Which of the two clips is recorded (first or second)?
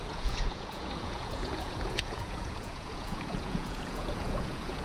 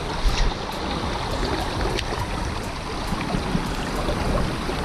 second